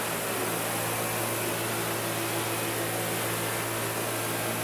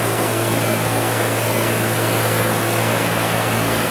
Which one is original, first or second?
first